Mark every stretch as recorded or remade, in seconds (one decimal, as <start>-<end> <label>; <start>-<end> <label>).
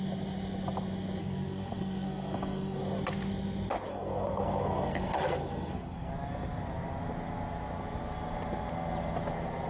0.0-1.2 recorded; 1.2-2.8 remade; 2.8-3.9 recorded; 3.9-6.1 remade; 6.1-9.7 recorded